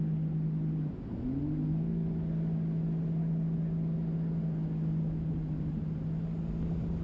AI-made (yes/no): no